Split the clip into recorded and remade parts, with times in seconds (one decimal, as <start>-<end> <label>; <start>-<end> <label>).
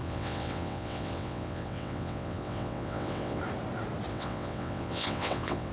0.0-3.4 remade; 3.4-4.1 recorded; 4.1-5.7 remade